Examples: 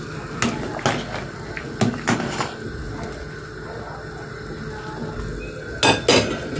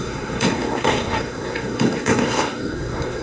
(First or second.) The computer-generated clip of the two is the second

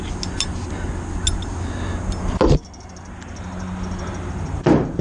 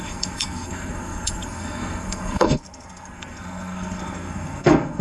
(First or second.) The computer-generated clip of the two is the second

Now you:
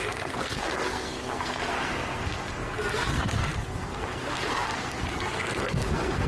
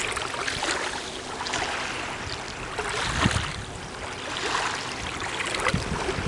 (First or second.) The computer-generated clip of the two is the first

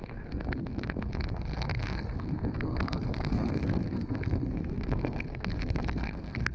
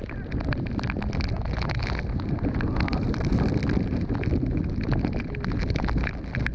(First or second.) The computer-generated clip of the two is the first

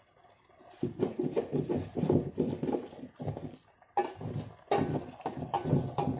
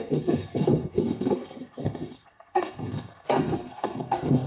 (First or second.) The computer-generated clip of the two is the second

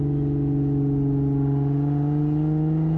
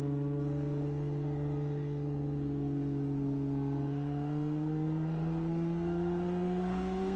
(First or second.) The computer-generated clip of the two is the second